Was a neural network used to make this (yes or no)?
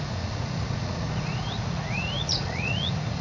yes